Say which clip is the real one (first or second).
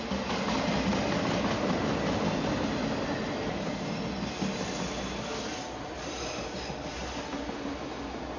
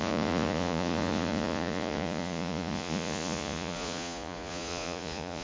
first